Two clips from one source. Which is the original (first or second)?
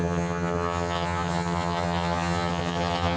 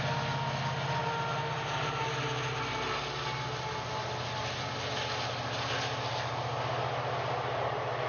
second